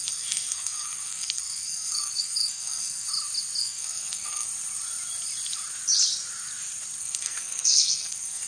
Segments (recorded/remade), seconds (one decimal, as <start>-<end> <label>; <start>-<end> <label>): 0.0-3.1 remade; 3.1-3.6 recorded; 3.6-4.5 remade; 4.5-7.0 recorded; 7.0-8.5 remade